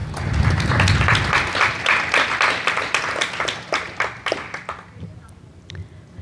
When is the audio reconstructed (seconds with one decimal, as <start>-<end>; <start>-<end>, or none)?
1.3-6.2